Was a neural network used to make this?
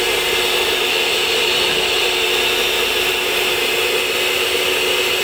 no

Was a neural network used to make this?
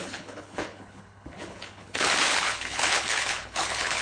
yes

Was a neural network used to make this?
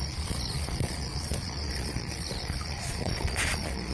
yes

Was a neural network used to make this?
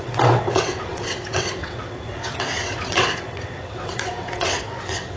yes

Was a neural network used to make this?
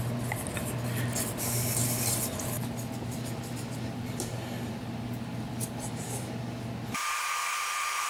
yes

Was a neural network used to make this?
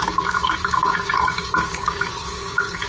yes